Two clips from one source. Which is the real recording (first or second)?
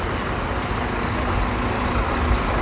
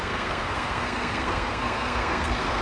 first